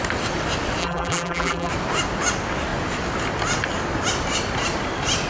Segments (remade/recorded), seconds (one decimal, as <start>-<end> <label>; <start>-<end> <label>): 0.0-0.8 recorded; 0.8-1.7 remade; 1.7-5.3 recorded